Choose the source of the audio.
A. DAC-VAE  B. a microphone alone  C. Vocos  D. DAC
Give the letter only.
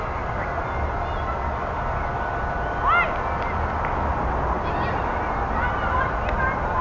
B